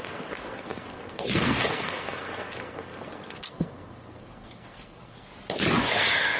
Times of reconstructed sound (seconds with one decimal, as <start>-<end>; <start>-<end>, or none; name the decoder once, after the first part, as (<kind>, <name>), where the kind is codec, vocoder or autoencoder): 0.0-5.3 (codec, SNAC); 5.8-6.4